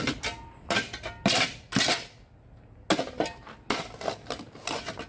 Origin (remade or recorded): recorded